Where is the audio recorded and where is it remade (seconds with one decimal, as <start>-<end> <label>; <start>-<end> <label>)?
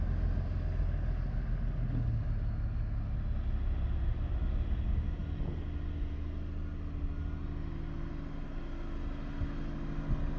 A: 0.0-10.4 recorded